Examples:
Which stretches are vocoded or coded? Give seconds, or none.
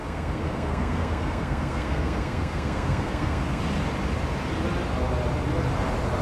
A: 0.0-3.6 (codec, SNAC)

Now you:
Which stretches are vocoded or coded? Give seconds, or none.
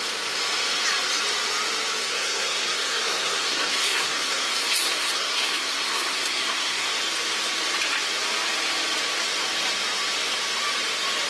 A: 2.0-6.9 (codec, SNAC)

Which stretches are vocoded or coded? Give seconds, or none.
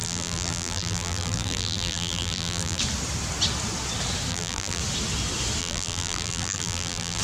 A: 0.0-2.8 (vocoder, BigVGAN v2); 4.3-4.8; 5.6-7.2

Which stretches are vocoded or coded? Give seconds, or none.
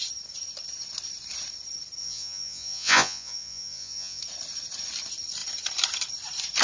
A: 2.0-4.2 (vocoder, Vocos)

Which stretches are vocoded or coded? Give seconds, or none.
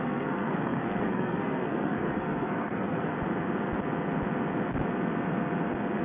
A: 0.0-3.1 (codec, SNAC)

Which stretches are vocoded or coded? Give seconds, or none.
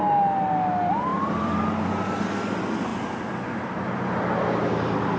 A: 1.1-1.6 (vocoder, BigVGAN v2)